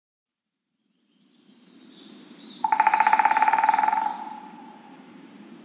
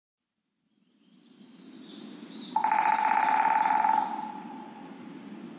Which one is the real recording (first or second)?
second